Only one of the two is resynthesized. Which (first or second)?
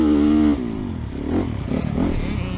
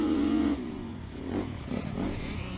second